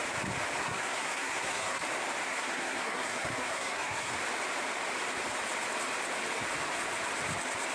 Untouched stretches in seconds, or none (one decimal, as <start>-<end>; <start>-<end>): 0.0-0.6; 1.8-2.3; 4.1-7.7